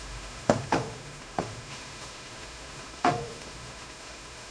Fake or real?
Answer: fake